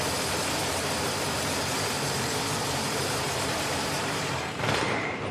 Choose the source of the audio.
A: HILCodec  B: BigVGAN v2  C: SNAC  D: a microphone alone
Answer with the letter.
B